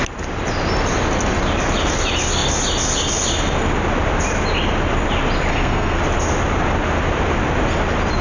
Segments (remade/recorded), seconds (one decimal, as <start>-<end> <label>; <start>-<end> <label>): 0.0-5.5 recorded; 5.5-6.0 remade; 6.0-8.2 recorded

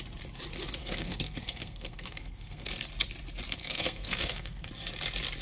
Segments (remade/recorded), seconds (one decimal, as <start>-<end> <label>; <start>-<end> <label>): 0.0-0.8 recorded; 0.8-2.7 remade; 2.7-3.6 recorded; 3.6-4.7 remade; 4.7-5.4 recorded

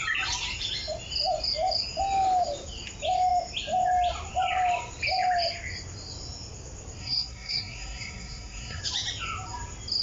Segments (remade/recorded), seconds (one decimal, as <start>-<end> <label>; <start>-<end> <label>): 0.0-7.0 recorded; 7.0-8.8 remade; 8.8-10.0 recorded